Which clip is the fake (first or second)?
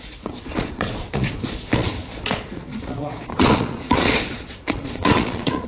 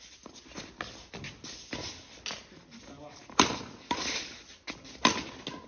first